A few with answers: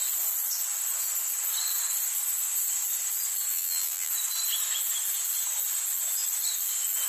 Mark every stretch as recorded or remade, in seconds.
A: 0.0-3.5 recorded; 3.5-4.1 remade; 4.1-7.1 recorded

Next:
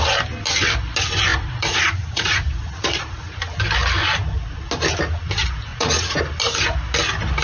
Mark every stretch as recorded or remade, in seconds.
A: 0.0-1.3 recorded; 1.3-3.4 remade; 3.4-4.0 recorded; 4.0-4.6 remade; 4.6-5.7 recorded; 5.7-6.2 remade; 6.2-7.4 recorded